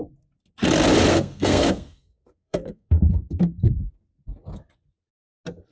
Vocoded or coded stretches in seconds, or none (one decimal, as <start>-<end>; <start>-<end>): 1.1-3.8